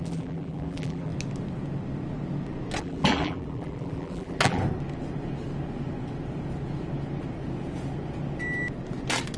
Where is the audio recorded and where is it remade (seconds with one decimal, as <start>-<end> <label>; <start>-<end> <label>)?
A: 0.0-1.1 remade; 1.1-2.8 recorded; 2.8-4.6 remade; 4.6-9.4 recorded